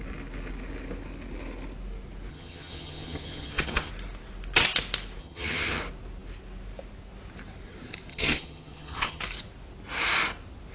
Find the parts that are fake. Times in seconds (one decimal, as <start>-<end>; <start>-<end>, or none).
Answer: 2.3-3.9; 5.2-5.8; 8.1-9.2